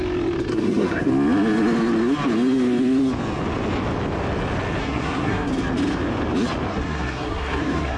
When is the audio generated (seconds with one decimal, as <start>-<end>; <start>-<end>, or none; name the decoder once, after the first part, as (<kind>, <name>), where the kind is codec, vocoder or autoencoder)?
0.5-1.1 (codec, SNAC); 4.8-5.5; 6.7-8.0